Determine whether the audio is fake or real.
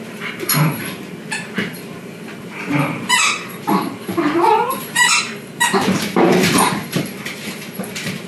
fake